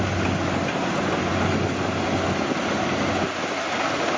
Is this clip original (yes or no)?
yes